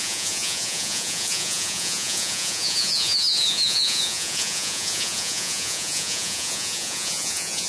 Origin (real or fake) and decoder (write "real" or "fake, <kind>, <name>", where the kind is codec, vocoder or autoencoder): fake, vocoder, Vocos